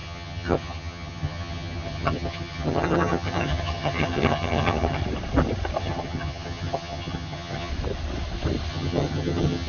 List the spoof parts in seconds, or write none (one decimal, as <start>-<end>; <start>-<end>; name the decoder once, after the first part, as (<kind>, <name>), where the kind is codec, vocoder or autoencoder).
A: 0.0-5.0 (vocoder, HiFi-GAN); 5.8-7.7; 8.7-9.7